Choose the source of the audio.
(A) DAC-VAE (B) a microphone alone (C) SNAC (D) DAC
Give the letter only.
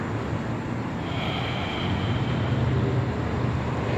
B